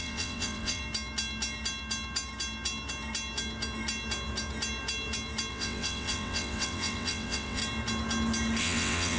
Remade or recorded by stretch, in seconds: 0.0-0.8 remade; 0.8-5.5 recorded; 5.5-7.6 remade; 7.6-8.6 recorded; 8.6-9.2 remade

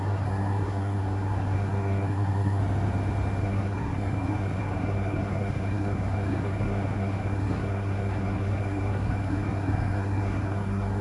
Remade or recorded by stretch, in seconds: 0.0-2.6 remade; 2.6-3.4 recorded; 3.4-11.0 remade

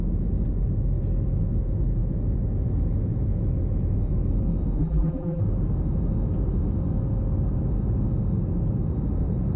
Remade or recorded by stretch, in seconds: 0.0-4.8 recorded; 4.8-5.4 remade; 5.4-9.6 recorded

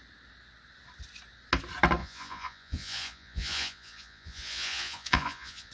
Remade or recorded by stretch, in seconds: 0.0-2.0 recorded; 2.0-5.7 remade